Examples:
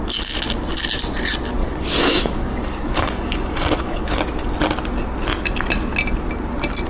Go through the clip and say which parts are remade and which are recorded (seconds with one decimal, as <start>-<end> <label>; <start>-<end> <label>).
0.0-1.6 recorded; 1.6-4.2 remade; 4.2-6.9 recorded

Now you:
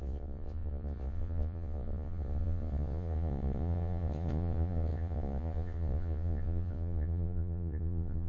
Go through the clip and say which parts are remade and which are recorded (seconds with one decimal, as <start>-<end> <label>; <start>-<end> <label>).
0.0-8.3 remade

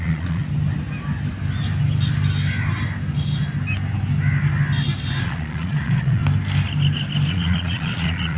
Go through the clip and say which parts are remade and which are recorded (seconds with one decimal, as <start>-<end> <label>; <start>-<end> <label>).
0.0-0.4 remade; 0.4-5.2 recorded; 5.2-6.2 remade; 6.2-7.3 recorded; 7.3-8.4 remade

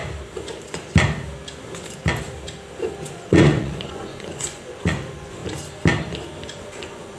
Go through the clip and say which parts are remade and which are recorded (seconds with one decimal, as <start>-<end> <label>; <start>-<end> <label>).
0.0-3.1 recorded; 3.1-5.4 remade; 5.4-6.6 recorded; 6.6-7.2 remade

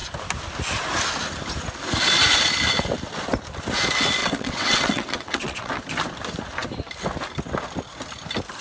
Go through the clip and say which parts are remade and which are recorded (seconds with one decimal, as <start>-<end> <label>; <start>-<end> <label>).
0.0-4.2 recorded; 4.2-5.7 remade; 5.7-8.6 recorded

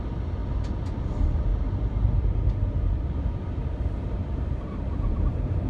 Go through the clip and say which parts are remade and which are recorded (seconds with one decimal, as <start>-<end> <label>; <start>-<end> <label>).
0.0-1.5 recorded; 1.5-3.1 remade; 3.1-3.6 recorded; 3.6-5.7 remade

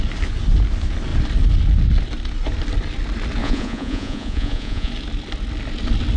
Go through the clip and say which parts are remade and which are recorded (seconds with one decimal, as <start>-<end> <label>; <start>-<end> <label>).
0.0-3.4 recorded; 3.4-4.9 remade; 4.9-6.2 recorded

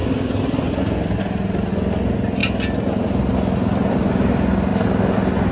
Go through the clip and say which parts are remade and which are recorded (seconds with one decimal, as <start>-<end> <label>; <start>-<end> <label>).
0.0-5.5 recorded